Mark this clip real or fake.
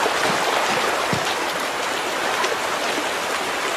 real